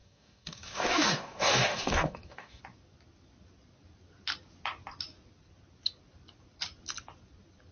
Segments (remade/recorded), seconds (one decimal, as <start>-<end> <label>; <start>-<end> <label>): 0.0-2.6 remade; 2.6-7.7 recorded

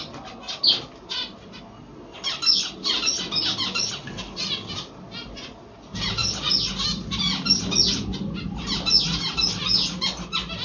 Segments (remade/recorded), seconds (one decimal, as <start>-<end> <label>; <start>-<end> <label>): 0.0-10.6 recorded